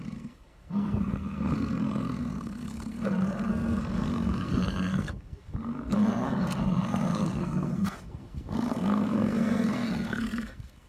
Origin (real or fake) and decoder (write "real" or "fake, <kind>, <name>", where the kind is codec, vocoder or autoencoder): fake, codec, SNAC